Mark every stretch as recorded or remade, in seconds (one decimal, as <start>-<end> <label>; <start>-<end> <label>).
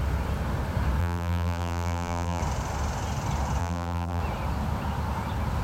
0.0-1.0 recorded; 1.0-2.4 remade; 2.4-3.6 recorded; 3.6-4.2 remade; 4.2-5.6 recorded